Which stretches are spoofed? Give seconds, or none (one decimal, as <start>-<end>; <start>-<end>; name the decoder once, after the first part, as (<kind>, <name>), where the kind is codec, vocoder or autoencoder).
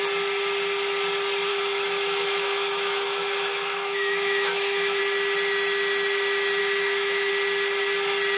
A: 1.5-5.0 (autoencoder, DAC-VAE); 6.6-7.3